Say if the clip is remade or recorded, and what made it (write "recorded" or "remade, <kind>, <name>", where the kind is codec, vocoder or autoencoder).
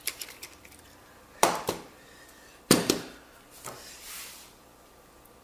remade, vocoder, BigVGAN v2